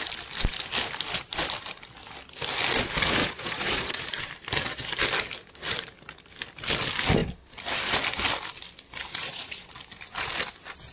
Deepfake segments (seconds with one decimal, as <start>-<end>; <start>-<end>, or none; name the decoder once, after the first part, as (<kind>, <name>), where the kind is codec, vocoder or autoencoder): 3.2-4.0 (vocoder, Vocos); 9.1-9.7